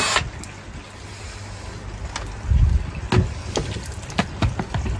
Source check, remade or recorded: recorded